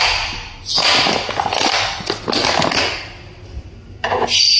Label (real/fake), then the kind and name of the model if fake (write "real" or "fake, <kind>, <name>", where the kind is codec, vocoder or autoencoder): real